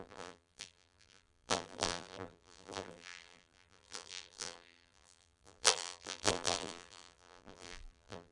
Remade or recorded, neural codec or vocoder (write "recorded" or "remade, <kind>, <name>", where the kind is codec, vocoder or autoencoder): remade, vocoder, BigVGAN v2